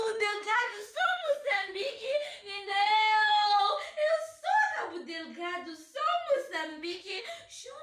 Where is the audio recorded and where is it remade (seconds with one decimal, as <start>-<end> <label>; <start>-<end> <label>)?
0.0-3.6 remade; 3.6-6.7 recorded; 6.7-7.3 remade; 7.3-7.8 recorded